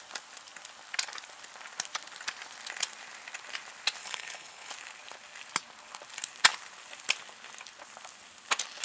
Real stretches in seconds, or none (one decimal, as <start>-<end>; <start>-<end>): 0.0-4.0; 4.7-8.8